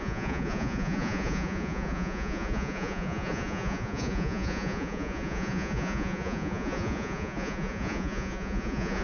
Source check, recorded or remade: remade